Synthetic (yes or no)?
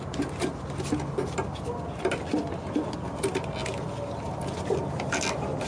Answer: no